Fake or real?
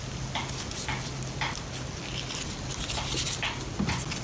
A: real